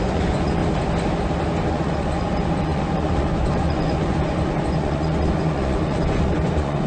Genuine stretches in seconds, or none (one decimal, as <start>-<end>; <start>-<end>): 0.6-1.7